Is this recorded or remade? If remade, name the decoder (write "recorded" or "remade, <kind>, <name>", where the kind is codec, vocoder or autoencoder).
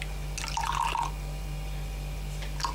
recorded